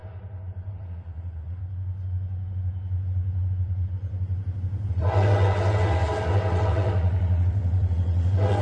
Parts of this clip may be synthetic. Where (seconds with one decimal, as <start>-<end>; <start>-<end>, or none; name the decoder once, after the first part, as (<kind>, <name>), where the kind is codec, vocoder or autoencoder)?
0.7-1.6 (vocoder, WaveNeXt); 4.9-8.6